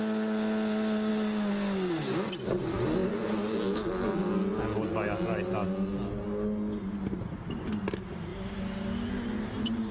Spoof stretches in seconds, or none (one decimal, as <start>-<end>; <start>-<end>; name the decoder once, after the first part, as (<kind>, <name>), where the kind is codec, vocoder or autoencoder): none